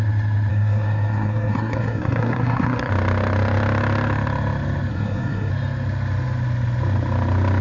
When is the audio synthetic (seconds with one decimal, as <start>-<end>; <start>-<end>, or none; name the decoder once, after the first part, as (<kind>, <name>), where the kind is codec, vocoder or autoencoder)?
0.5-2.9 (codec, SNAC); 4.9-5.5